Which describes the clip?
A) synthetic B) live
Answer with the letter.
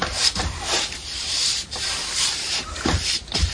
A